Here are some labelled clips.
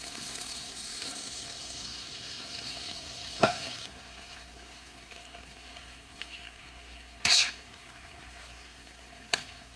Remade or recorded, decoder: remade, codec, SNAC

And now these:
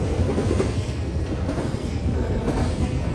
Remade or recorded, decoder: remade, codec, SNAC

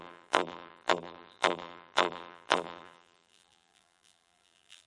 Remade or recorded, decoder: remade, vocoder, BigVGAN v2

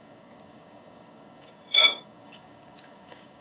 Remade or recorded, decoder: remade, codec, DAC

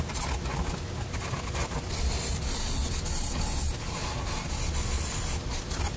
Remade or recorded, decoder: recorded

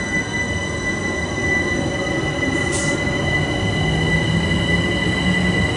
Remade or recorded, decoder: recorded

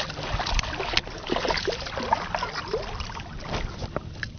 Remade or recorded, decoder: recorded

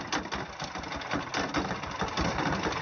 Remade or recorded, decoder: recorded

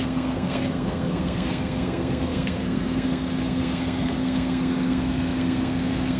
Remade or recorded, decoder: remade, codec, SNAC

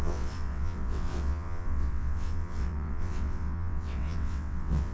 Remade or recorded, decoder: remade, vocoder, WaveNeXt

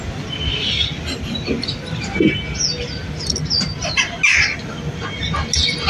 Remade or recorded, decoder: recorded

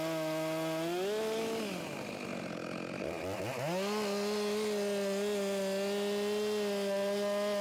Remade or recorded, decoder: recorded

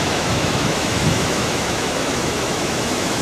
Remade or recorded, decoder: remade, autoencoder, DAC-VAE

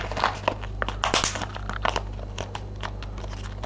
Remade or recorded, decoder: recorded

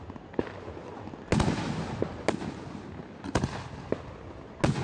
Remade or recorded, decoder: recorded